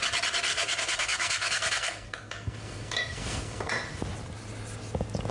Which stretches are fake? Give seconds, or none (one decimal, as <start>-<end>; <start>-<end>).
0.5-3.7